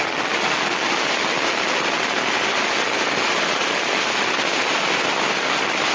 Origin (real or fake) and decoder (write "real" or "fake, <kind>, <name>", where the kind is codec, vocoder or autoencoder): real